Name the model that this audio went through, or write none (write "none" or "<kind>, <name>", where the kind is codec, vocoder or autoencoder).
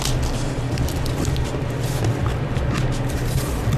none